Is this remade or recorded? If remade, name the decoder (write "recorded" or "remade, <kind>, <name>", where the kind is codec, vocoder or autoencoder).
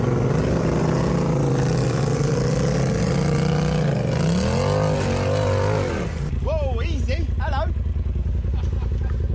recorded